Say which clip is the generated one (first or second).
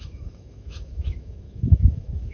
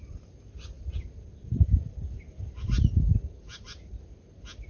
first